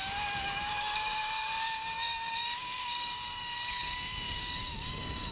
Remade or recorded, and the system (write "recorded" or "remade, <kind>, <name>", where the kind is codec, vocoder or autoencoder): remade, codec, DAC